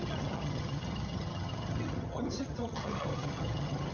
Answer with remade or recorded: remade